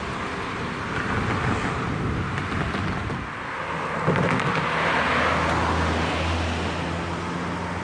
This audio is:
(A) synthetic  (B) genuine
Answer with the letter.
B